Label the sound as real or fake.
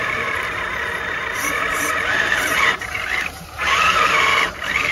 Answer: fake